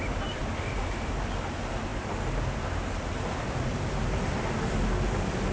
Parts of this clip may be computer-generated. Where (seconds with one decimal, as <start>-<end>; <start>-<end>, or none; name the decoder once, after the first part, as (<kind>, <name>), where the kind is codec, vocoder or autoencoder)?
none